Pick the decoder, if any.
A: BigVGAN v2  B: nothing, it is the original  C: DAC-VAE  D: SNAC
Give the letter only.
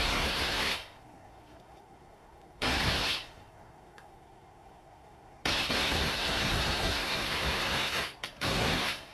D